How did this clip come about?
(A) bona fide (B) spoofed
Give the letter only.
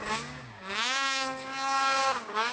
B